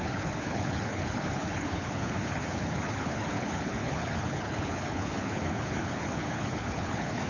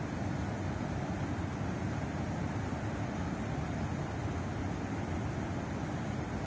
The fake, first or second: first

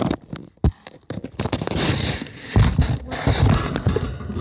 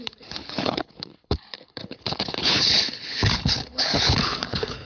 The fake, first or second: second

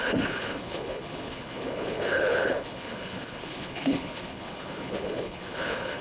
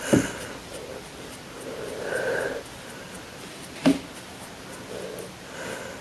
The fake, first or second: first